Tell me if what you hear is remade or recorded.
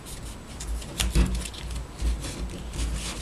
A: recorded